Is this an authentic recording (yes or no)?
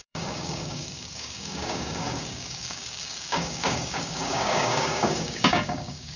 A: no